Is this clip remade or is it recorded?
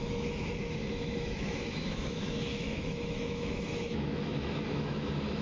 remade